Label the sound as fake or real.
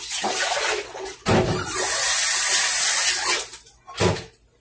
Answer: real